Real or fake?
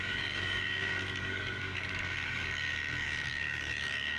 fake